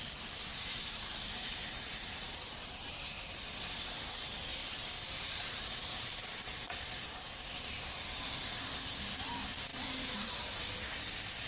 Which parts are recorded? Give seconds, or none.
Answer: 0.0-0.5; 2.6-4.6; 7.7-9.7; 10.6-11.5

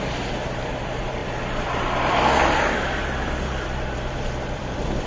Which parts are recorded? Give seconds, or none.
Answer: none

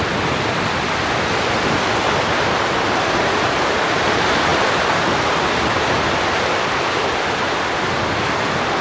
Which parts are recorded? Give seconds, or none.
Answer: 0.0-8.8

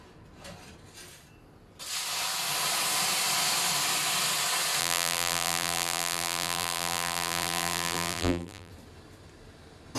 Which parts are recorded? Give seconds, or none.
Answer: 0.0-4.8; 8.7-10.0

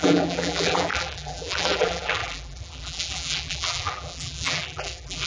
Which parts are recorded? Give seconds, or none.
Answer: none

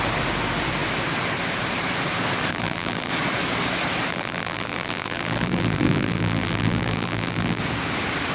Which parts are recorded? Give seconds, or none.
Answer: 0.0-2.5; 3.1-4.1; 7.6-8.3

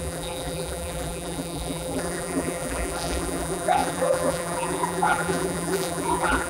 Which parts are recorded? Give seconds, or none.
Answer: none